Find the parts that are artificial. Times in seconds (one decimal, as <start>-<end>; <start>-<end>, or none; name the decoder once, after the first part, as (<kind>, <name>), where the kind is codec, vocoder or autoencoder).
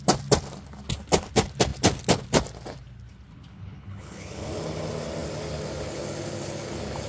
3.5-4.5 (codec, HILCodec)